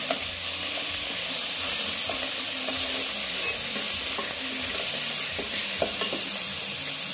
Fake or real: real